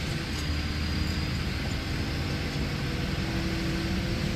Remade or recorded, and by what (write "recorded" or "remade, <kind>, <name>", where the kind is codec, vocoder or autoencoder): recorded